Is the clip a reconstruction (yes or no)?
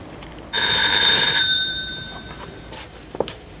yes